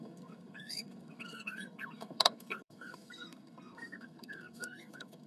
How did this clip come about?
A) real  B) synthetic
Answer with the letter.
B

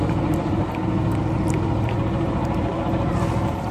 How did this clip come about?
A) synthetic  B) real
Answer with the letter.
B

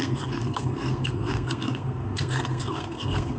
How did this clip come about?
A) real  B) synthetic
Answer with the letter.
B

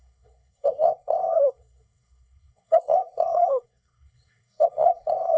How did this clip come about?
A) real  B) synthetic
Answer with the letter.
B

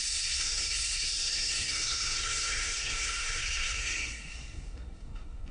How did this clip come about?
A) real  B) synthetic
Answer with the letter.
B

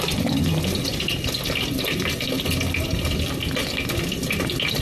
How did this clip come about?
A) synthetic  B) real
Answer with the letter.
B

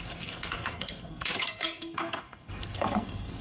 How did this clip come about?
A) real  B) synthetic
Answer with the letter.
B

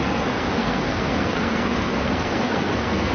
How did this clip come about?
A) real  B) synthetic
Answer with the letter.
B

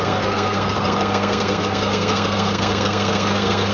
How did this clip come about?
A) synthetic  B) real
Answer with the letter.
A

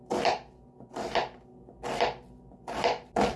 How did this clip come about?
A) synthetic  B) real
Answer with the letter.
B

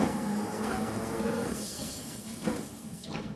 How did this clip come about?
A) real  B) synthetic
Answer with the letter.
B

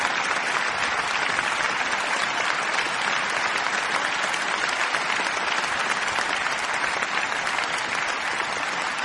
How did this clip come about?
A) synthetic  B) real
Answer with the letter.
B